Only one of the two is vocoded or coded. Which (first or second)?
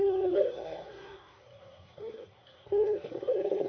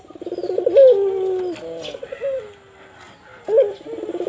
first